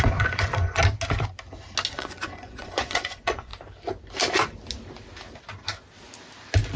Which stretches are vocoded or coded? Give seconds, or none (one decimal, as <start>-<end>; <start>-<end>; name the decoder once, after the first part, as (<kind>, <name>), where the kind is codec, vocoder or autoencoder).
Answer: 0.0-0.8 (vocoder, Vocos); 1.9-3.5